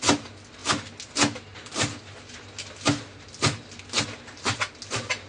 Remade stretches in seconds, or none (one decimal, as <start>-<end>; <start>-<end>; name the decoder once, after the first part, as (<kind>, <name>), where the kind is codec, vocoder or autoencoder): none